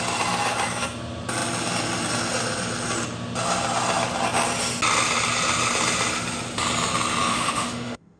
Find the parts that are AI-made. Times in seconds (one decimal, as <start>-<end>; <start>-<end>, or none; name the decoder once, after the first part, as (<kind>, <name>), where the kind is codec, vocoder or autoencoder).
7.3-8.2 (autoencoder, DAC-VAE)